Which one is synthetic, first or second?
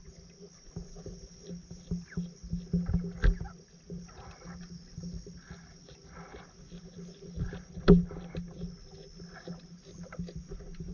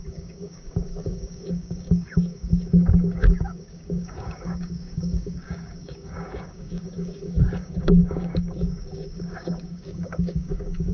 second